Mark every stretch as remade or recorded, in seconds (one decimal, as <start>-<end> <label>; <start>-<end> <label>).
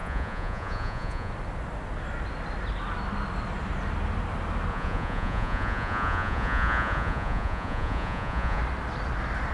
0.0-1.3 remade; 1.3-4.7 recorded; 4.7-8.6 remade; 8.6-9.5 recorded